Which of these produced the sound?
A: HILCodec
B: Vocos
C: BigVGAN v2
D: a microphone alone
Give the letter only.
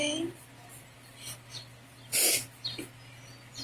D